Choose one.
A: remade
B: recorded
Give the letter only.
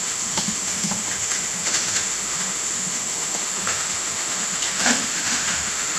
A